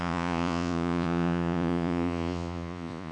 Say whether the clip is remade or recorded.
remade